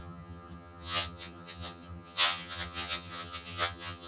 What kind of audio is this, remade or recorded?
remade